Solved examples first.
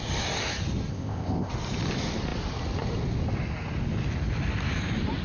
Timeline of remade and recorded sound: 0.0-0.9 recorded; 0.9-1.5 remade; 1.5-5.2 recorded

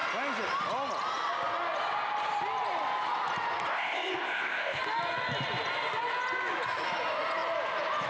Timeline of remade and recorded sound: 0.0-3.7 recorded; 3.7-4.8 remade; 4.8-8.1 recorded

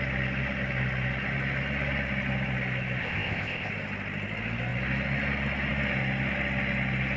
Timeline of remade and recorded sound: 0.0-3.0 recorded; 3.0-3.7 remade; 3.7-7.2 recorded